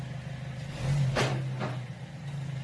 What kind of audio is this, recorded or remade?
recorded